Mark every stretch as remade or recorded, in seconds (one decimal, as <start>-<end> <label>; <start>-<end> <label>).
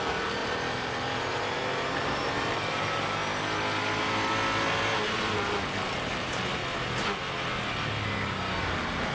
0.0-3.2 remade; 3.2-5.1 recorded; 5.1-6.6 remade; 6.6-8.6 recorded; 8.6-9.1 remade